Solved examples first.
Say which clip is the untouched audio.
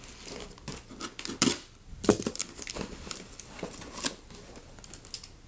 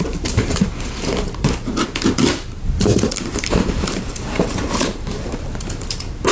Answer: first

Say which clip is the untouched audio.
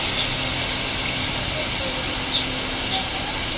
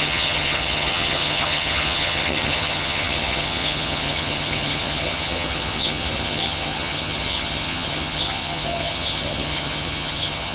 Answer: first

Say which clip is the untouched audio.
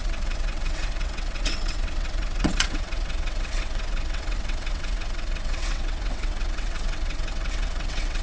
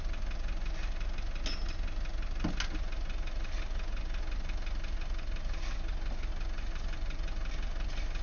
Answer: second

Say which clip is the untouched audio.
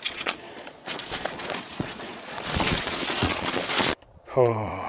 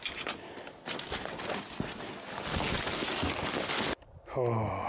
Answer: second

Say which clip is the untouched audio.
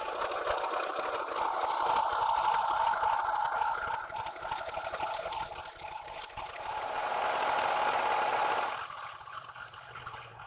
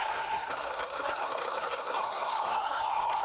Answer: first